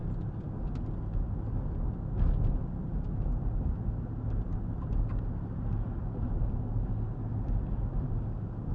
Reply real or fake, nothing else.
real